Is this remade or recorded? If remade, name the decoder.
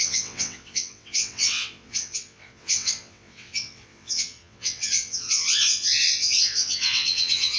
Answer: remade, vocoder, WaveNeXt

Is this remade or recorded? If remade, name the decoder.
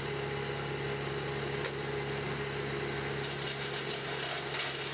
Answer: recorded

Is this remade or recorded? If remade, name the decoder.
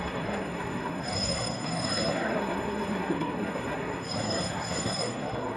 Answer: remade, codec, SNAC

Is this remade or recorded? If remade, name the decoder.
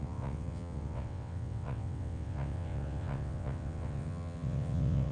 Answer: remade, vocoder, WaveNeXt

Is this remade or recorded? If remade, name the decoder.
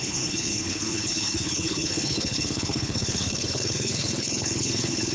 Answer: remade, codec, HILCodec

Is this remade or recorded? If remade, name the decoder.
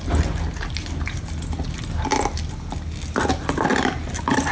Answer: recorded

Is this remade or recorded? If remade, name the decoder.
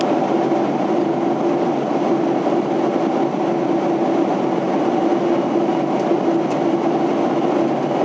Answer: recorded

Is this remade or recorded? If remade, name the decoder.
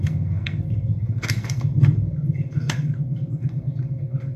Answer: remade, codec, SNAC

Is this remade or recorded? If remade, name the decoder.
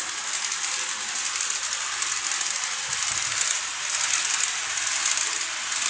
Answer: recorded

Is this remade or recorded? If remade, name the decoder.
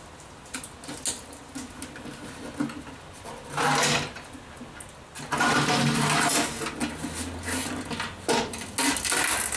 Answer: recorded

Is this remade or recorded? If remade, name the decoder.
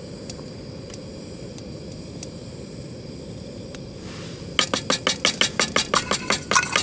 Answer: recorded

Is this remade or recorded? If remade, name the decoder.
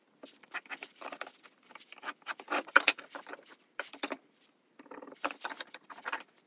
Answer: remade, vocoder, BigVGAN v2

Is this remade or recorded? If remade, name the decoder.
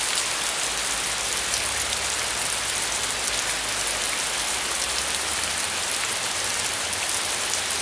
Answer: recorded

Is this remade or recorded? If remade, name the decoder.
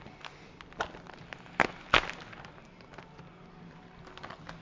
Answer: recorded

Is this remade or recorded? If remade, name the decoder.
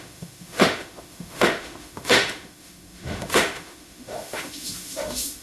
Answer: remade, autoencoder, DAC-VAE